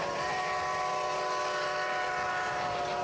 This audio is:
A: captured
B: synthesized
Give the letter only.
A